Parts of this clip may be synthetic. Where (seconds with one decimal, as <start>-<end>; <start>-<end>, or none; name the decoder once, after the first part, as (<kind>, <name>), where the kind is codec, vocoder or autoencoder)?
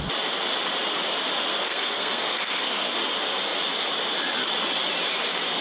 1.5-2.9 (codec, SNAC)